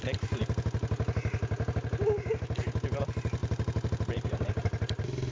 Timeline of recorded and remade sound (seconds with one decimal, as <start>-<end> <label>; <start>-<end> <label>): 0.0-3.4 recorded; 3.4-5.3 remade